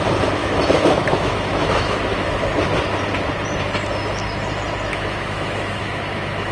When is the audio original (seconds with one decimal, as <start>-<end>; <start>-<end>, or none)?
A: 0.0-0.4; 2.3-4.9